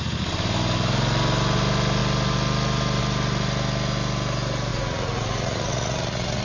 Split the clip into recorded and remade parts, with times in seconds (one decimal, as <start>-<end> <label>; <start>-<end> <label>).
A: 0.0-4.7 recorded; 4.7-6.4 remade